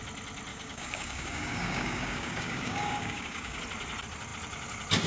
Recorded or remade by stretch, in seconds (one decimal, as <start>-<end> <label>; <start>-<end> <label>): 0.0-0.5 recorded; 0.5-3.6 remade; 3.6-5.1 recorded